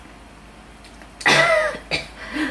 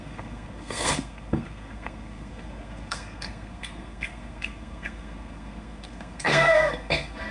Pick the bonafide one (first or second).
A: first